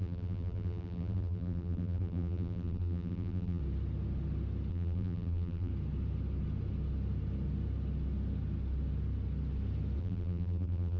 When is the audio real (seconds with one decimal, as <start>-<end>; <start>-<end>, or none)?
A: 3.6-4.7; 5.7-10.0